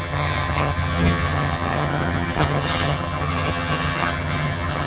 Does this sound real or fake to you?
fake